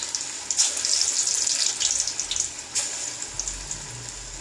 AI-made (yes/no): no